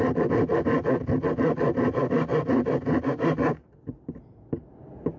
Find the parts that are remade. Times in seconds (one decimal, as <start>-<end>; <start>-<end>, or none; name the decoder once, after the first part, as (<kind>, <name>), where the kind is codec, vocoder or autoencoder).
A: none